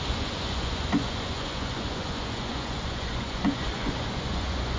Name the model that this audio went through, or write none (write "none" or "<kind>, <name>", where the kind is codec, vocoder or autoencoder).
vocoder, Vocos